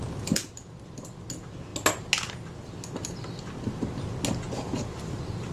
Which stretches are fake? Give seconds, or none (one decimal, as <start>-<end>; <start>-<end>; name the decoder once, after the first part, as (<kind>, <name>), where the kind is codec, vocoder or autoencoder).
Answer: none

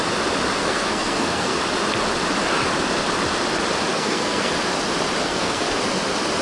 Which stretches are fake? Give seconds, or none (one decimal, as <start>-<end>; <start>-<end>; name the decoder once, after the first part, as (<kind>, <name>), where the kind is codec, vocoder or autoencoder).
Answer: 0.6-1.6 (codec, SNAC); 3.9-4.5; 5.2-5.8

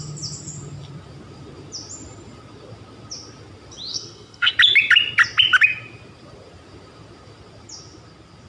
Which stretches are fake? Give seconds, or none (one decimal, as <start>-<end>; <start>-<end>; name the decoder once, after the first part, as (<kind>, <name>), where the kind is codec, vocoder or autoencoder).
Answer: 3.9-4.5 (codec, SNAC)